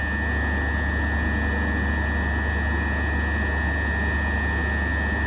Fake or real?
real